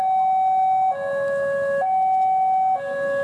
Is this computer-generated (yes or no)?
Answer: no